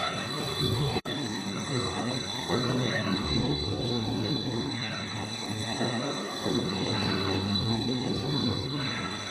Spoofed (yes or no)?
yes